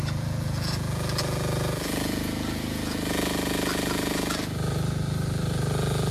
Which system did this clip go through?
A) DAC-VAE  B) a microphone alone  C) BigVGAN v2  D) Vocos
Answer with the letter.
C